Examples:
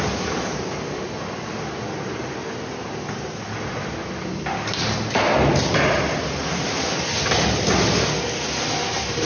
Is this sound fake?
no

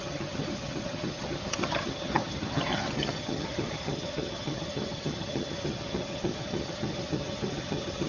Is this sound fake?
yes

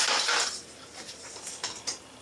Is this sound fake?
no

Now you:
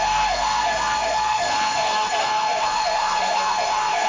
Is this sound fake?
yes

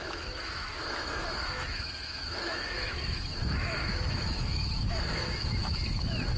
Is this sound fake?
yes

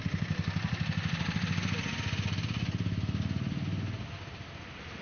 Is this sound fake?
no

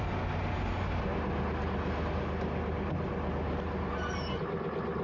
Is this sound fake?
no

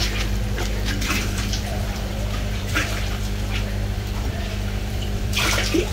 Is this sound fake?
yes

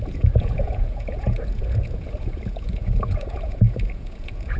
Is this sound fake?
yes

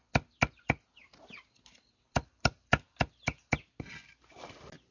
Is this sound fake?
no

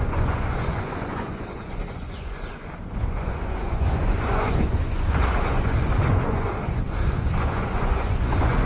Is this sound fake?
yes